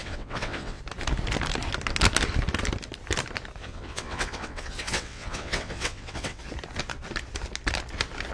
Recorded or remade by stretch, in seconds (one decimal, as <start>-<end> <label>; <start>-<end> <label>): 0.0-0.8 remade; 0.8-3.6 recorded; 3.6-6.4 remade; 6.4-8.3 recorded